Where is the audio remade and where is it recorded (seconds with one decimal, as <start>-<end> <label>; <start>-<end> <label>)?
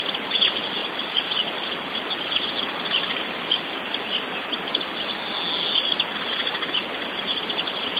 0.0-8.0 recorded